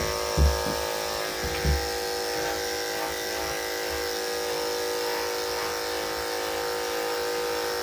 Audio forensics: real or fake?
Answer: real